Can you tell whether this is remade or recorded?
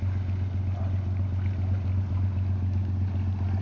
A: recorded